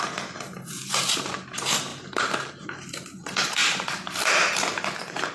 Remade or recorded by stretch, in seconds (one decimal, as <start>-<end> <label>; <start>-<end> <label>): 0.0-5.3 remade